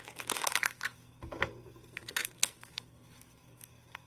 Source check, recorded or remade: remade